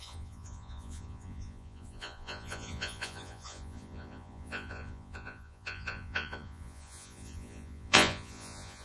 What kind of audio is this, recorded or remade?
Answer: remade